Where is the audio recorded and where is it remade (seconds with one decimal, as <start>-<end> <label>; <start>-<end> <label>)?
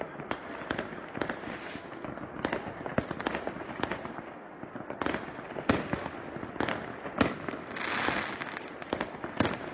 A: 0.0-9.7 recorded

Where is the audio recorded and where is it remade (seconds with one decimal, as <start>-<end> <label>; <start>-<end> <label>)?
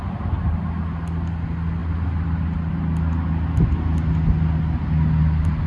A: 0.0-5.7 recorded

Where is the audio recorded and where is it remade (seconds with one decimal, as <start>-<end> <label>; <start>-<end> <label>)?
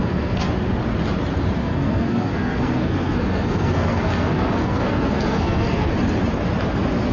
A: 0.0-0.5 remade; 0.5-1.6 recorded; 1.6-5.9 remade; 5.9-7.1 recorded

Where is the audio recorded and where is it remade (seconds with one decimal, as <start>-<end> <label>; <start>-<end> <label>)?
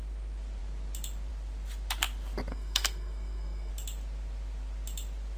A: 0.0-2.5 recorded; 2.5-3.7 remade; 3.7-5.4 recorded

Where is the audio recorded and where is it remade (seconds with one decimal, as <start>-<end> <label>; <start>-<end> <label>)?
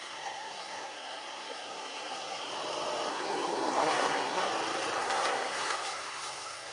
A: 0.0-2.5 remade; 2.5-3.1 recorded; 3.1-4.5 remade; 4.5-5.0 recorded; 5.0-6.7 remade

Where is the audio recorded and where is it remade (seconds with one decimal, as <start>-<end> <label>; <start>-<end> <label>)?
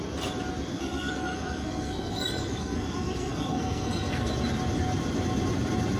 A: 0.0-0.7 recorded; 0.7-4.3 remade; 4.3-6.0 recorded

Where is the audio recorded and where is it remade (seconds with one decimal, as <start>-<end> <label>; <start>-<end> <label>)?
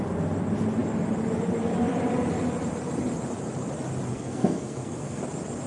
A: 0.0-4.1 recorded; 4.1-5.2 remade; 5.2-5.7 recorded